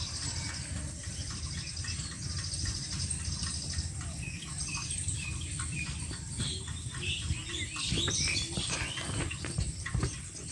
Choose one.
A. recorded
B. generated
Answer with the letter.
A